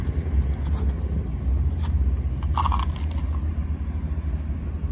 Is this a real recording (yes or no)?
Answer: yes